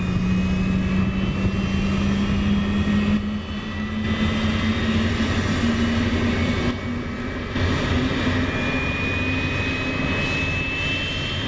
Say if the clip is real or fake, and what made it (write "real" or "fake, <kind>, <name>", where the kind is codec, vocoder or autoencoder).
real